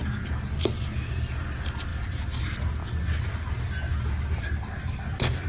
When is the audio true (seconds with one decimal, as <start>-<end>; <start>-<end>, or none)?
0.0-5.5